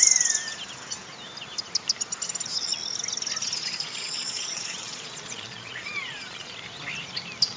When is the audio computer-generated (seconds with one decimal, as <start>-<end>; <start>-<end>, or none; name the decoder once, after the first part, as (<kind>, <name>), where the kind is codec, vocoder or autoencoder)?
3.4-6.5 (vocoder, Vocos)